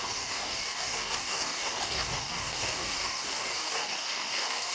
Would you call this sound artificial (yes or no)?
yes